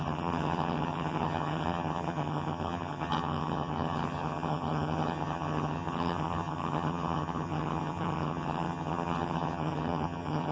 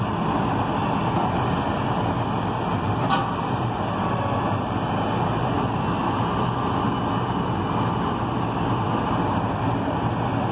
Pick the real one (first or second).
second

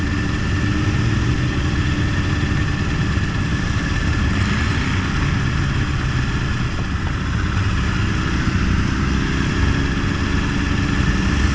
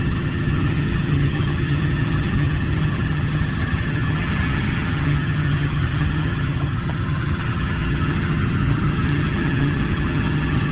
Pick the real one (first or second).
first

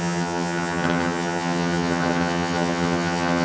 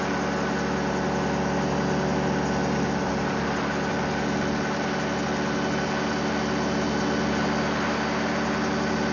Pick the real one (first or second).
second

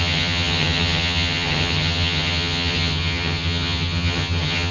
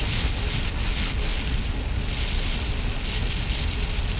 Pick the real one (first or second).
second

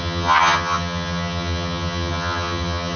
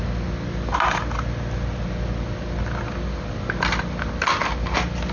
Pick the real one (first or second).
second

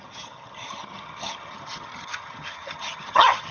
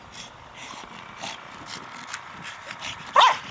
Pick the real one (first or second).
second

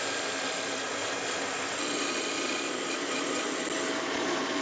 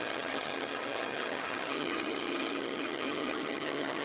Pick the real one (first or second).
first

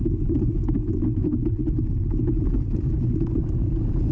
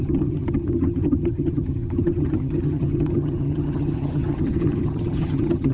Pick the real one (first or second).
first